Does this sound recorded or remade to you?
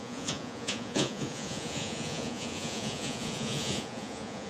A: remade